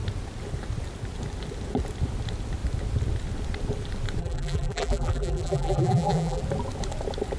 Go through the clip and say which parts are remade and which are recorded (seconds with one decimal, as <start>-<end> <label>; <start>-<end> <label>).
0.0-4.2 recorded; 4.2-6.4 remade; 6.4-7.4 recorded